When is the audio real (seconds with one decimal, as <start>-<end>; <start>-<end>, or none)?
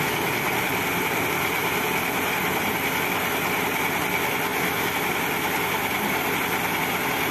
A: 0.0-7.3